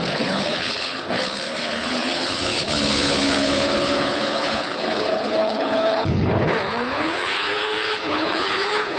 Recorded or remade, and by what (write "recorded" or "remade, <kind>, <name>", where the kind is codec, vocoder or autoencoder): remade, codec, HILCodec